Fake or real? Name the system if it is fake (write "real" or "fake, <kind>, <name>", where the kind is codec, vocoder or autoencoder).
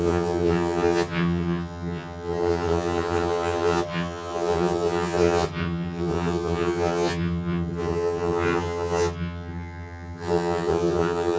fake, vocoder, HiFi-GAN